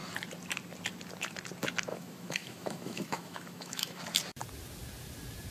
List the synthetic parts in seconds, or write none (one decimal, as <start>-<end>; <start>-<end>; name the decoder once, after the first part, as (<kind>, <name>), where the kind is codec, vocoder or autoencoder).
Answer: 1.9-4.0 (autoencoder, DAC-VAE)